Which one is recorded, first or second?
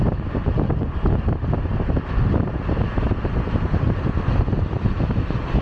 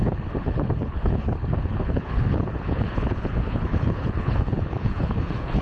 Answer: first